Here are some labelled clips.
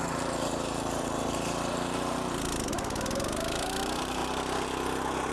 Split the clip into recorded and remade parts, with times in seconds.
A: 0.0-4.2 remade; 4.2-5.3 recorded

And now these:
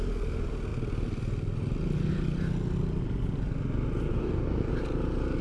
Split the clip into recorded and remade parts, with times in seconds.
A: 0.0-4.1 recorded; 4.1-4.7 remade; 4.7-5.4 recorded

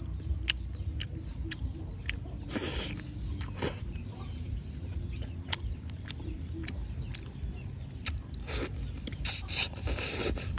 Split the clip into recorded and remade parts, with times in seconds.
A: 0.0-2.7 remade; 2.7-3.8 recorded; 3.8-6.6 remade; 6.6-9.2 recorded; 9.2-10.6 remade

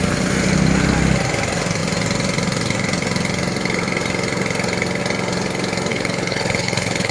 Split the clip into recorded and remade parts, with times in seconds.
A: 0.0-5.9 recorded; 5.9-7.1 remade